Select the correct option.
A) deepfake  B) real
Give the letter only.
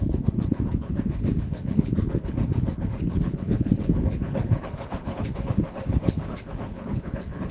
A